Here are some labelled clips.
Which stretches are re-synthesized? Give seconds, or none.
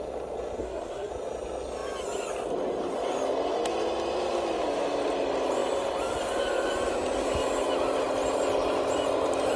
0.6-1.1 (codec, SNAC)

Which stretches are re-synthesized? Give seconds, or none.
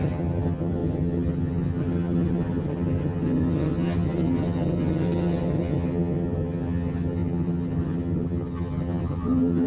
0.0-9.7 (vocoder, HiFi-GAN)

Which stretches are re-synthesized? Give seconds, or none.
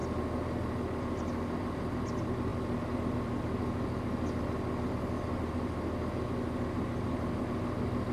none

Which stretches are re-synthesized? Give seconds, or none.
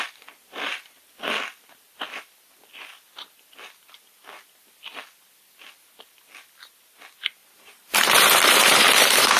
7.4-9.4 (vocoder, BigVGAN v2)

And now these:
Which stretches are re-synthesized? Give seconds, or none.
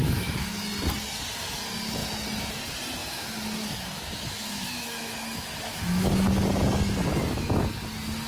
0.0-0.6 (autoencoder, DAC-VAE); 3.0-6.1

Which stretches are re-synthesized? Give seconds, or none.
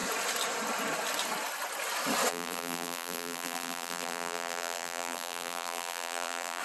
2.3-6.6 (vocoder, BigVGAN v2)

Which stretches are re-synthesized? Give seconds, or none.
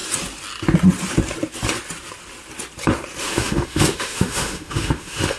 3.2-5.4 (autoencoder, DAC-VAE)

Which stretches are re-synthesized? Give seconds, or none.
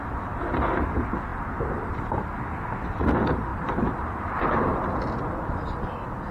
none